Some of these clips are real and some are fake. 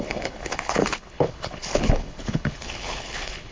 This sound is fake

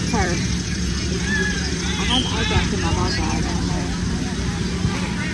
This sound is fake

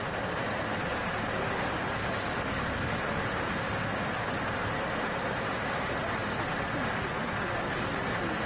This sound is real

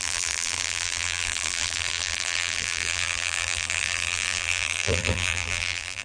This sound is fake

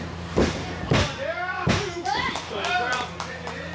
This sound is real